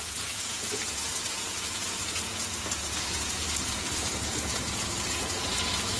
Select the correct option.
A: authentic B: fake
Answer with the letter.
B